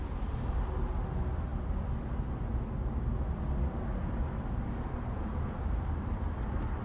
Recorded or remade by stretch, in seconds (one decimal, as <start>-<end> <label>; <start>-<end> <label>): 0.0-6.8 recorded